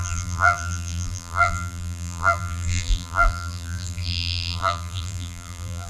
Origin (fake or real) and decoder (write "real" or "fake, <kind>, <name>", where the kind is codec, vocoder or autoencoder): fake, vocoder, BigVGAN v2